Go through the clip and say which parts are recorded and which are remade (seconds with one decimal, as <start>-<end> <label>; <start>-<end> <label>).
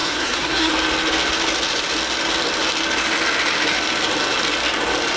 0.0-0.7 remade; 0.7-5.2 recorded